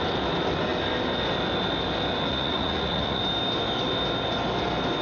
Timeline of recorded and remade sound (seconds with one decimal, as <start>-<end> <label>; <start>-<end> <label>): 0.0-2.3 recorded; 2.3-3.2 remade; 3.2-5.0 recorded